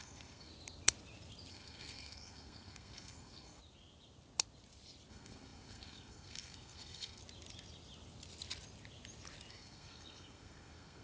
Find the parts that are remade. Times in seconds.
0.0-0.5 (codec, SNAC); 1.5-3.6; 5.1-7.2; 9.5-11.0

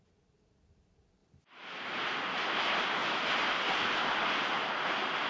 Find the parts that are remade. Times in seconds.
none

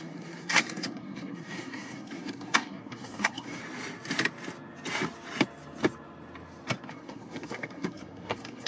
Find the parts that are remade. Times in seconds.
0.0-3.6 (codec, SNAC); 6.9-8.7

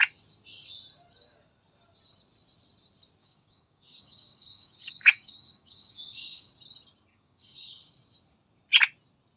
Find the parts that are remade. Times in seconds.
3.2-6.5 (codec, DAC); 7.1-7.9

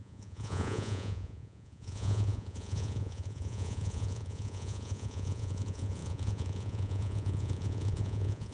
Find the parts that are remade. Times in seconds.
0.0-8.5 (vocoder, Vocos)

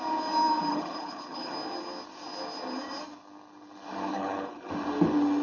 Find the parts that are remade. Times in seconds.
0.7-1.5 (codec, HILCodec); 4.1-4.7